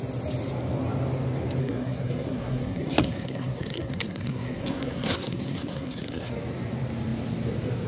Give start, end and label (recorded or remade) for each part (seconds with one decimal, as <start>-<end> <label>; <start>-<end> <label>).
0.0-1.6 recorded; 1.6-6.3 remade; 6.3-7.9 recorded